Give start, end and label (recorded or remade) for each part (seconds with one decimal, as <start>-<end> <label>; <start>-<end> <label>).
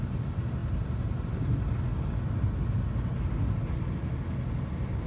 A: 0.0-5.1 recorded